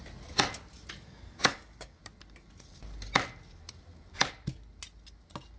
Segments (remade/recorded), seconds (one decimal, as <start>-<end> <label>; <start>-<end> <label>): 0.0-1.0 recorded; 1.0-2.0 remade; 2.0-5.6 recorded